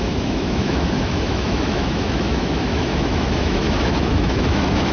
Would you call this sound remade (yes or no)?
yes